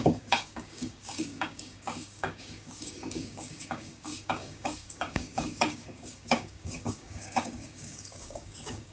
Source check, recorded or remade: remade